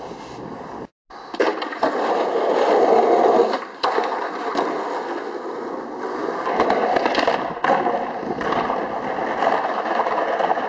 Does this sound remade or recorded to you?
recorded